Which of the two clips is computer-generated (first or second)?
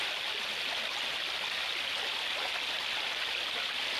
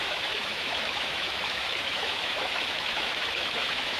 second